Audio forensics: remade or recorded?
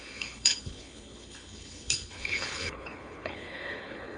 remade